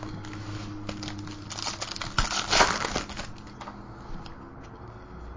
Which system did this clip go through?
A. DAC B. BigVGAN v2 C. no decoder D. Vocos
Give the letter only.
C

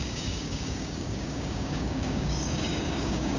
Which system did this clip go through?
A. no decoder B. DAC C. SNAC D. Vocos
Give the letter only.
B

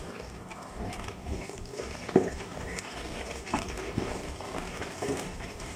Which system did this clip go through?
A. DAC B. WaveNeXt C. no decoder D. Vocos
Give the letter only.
A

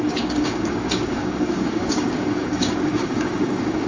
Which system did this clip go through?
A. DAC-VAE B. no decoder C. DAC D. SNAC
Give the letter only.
C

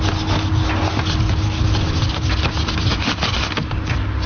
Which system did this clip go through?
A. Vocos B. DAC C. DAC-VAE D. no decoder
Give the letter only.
D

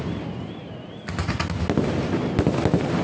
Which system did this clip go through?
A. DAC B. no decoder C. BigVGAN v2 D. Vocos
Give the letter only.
B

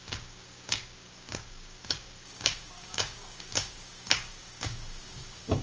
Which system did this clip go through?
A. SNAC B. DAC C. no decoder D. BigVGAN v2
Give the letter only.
B